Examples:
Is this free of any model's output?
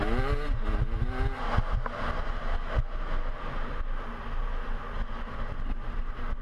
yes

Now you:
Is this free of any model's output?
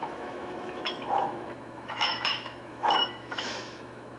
no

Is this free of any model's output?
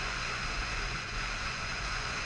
no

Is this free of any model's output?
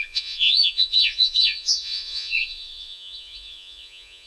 no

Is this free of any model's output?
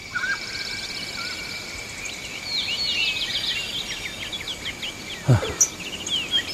yes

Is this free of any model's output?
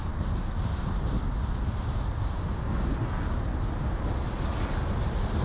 yes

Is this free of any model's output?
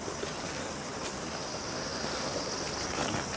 yes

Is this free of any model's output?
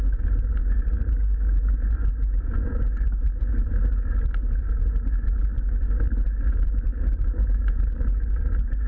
yes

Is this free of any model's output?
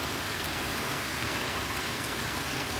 no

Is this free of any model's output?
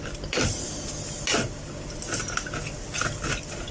yes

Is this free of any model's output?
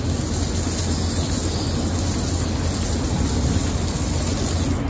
yes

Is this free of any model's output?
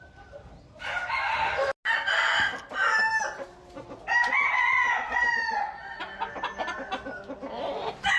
yes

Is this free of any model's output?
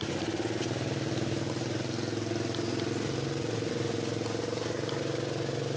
yes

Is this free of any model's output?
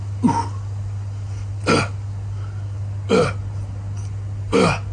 yes